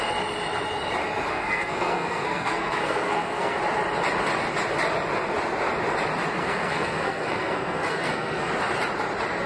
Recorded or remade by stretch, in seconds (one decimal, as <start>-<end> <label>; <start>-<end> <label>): 0.0-1.3 recorded; 1.3-3.6 remade; 3.6-6.4 recorded; 6.4-8.5 remade; 8.5-9.5 recorded